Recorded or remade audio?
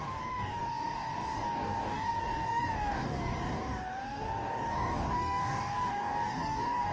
remade